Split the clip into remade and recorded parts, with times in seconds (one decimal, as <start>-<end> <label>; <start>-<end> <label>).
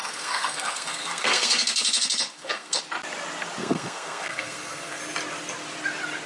0.0-2.8 remade; 2.8-3.6 recorded; 3.6-5.0 remade; 5.0-6.3 recorded